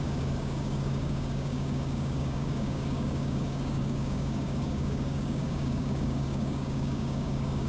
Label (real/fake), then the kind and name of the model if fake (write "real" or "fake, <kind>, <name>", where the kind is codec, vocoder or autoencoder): fake, codec, DAC